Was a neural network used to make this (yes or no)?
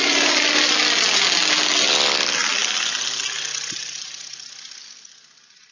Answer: no